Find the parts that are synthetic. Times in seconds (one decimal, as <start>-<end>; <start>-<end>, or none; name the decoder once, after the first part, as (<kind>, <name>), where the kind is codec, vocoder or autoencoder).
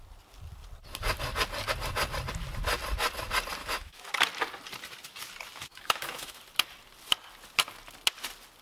3.6-4.1 (autoencoder, DAC-VAE); 5.7-6.4